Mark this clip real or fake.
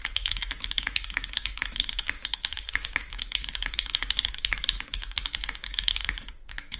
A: fake